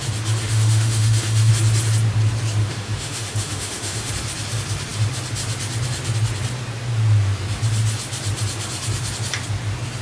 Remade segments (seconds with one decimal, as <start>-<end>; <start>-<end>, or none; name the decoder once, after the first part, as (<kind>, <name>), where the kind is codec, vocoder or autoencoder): 0.4-1.5 (autoencoder, DAC-VAE); 2.6-4.1